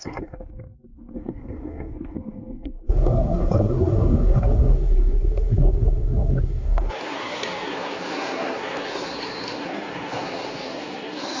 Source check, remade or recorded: remade